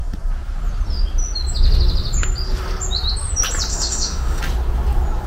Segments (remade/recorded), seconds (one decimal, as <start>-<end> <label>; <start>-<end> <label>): 0.0-3.7 recorded; 3.7-4.4 remade; 4.4-5.3 recorded